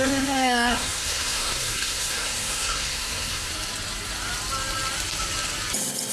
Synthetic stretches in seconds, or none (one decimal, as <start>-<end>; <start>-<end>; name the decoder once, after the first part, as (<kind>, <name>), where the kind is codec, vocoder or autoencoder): 0.0-3.5 (codec, SNAC)